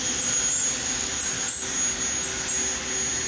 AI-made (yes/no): no